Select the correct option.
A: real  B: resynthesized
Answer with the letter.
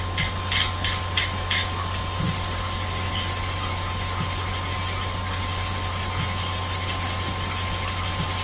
A